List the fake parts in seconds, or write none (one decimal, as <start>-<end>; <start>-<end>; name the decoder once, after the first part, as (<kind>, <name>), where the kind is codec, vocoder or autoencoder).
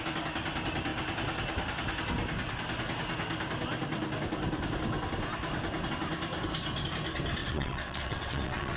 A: 7.4-8.8 (vocoder, WaveNeXt)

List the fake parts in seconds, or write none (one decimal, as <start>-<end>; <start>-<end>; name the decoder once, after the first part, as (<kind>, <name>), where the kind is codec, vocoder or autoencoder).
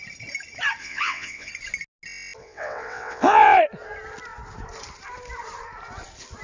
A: 0.8-1.5 (vocoder, WaveNeXt); 2.4-3.6